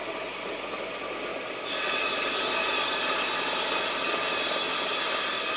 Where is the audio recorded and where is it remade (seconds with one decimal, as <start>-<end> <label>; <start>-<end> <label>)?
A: 0.0-5.6 recorded